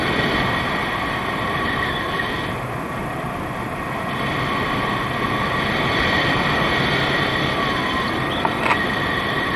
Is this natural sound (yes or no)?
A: yes